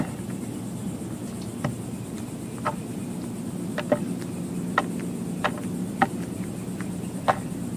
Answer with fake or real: real